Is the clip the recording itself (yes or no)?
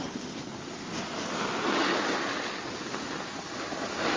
yes